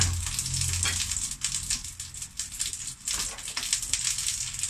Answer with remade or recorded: recorded